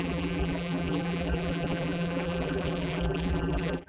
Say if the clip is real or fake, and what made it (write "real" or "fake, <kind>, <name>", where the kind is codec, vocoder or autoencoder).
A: fake, vocoder, BigVGAN v2